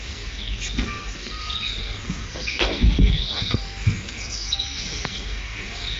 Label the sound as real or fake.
fake